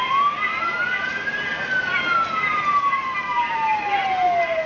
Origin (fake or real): real